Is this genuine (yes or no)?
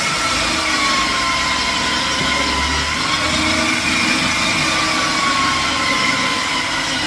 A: yes